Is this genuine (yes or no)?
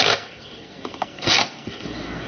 no